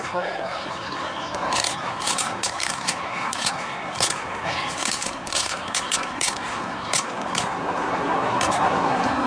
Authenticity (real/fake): fake